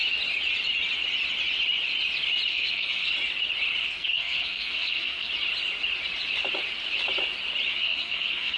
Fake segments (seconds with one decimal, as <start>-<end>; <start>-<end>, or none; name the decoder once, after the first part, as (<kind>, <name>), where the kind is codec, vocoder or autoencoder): 2.5-3.1 (codec, SNAC); 3.8-5.3; 7.7-8.6